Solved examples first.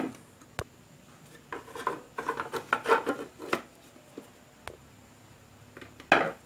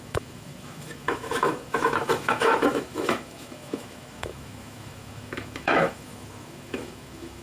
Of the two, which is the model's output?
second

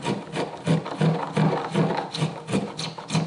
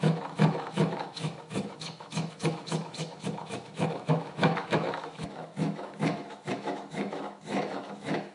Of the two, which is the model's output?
second